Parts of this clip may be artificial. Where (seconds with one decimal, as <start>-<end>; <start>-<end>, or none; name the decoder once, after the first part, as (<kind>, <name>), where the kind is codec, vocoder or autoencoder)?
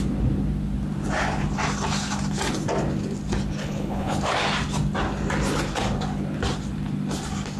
3.6-4.2 (codec, HILCodec)